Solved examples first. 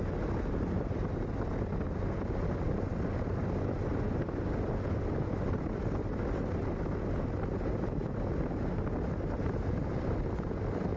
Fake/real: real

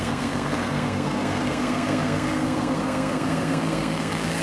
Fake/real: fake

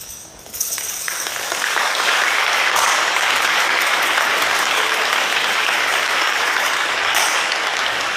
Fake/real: fake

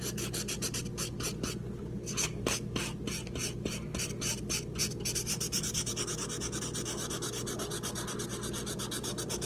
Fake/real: real